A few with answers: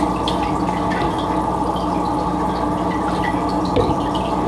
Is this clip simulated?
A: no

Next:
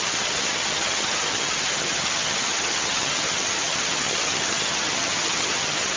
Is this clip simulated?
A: yes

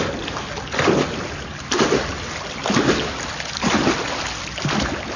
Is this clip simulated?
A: no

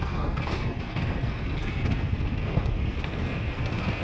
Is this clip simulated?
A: yes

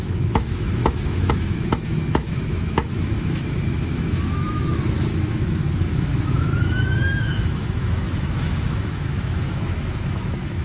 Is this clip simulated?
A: yes